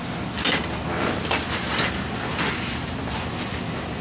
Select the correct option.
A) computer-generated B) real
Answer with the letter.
B